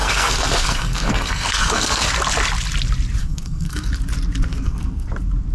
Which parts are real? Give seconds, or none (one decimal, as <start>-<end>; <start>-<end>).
2.1-3.2; 3.9-4.5; 5.1-5.5

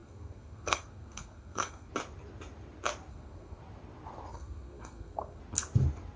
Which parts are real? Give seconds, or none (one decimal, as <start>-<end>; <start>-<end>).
1.9-3.1; 3.6-4.3; 5.4-6.2

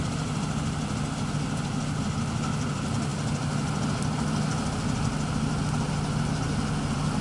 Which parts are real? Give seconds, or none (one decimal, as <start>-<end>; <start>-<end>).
0.0-7.2

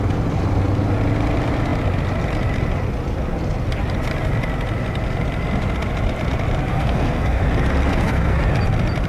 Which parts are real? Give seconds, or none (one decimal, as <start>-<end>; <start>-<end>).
0.0-6.7; 7.4-7.9; 8.4-9.1

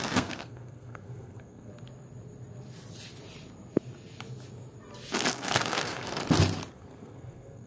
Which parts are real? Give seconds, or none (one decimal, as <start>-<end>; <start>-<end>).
1.7-5.3; 6.2-6.7

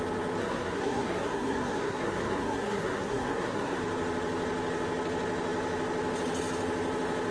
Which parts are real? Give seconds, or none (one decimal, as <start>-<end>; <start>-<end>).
0.0-0.4; 3.8-7.3